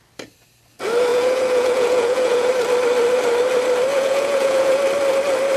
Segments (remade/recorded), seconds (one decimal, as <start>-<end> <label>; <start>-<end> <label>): 0.0-1.1 recorded; 1.1-2.5 remade; 2.5-3.9 recorded; 3.9-4.8 remade; 4.8-5.6 recorded